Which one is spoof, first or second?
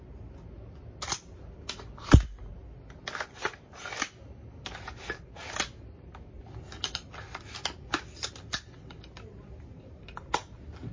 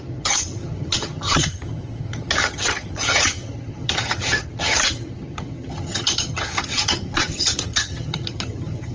second